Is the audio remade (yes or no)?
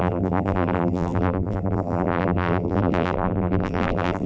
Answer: yes